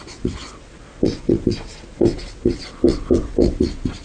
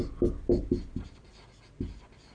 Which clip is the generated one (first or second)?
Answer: first